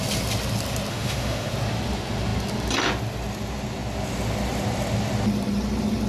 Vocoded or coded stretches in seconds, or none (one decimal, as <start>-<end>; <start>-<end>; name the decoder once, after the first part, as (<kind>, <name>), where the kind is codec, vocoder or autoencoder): 0.9-1.5 (autoencoder, DAC-VAE)